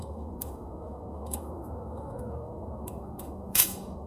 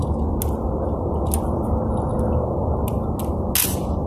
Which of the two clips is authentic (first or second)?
second